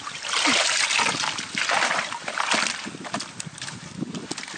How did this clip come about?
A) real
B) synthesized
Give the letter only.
A